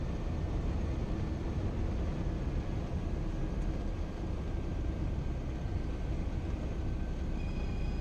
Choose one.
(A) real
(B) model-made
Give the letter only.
A